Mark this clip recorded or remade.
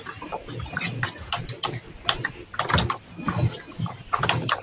remade